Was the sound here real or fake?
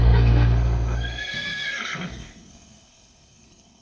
fake